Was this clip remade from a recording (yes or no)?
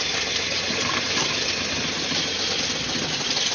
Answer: no